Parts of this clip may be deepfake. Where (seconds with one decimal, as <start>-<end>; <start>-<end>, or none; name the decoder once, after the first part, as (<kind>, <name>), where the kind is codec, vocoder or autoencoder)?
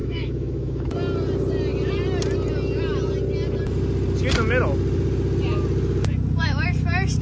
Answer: 0.0-0.9 (autoencoder, DAC-VAE)